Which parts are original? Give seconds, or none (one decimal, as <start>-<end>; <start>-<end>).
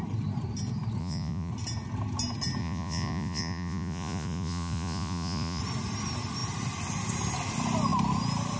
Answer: 0.0-1.0; 1.5-2.6; 5.6-8.6